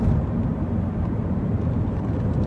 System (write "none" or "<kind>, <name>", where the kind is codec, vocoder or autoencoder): none